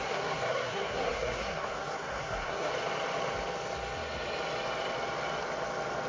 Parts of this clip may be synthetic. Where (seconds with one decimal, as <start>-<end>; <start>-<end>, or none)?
0.0-2.7